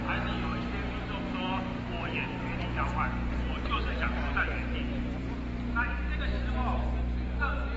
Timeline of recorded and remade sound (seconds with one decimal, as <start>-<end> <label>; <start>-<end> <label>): 0.0-7.8 recorded